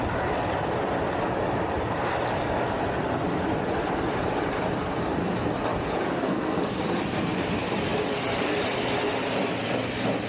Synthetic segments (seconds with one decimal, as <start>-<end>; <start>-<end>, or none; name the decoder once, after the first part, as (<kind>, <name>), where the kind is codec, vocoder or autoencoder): 6.1-6.6 (codec, SNAC)